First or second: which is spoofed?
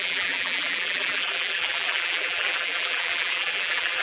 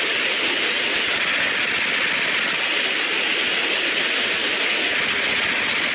first